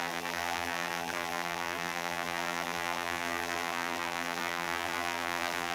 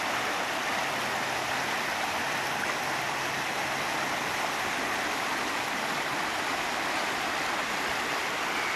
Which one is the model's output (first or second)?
first